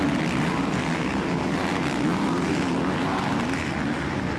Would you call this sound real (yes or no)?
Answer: yes